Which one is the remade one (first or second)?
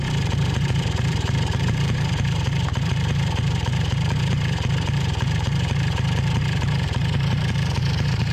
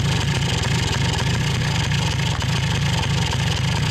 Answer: first